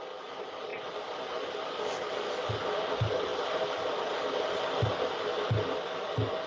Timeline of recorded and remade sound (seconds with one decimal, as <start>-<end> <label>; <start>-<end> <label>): 0.0-6.5 recorded